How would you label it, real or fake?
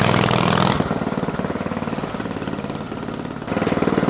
real